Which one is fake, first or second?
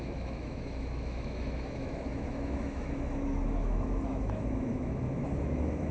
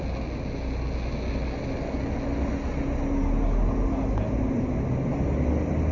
first